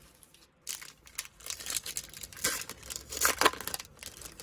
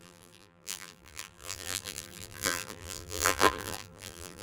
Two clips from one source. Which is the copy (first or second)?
second